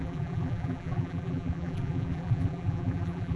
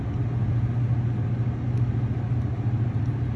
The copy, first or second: first